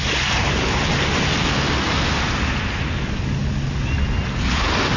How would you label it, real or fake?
real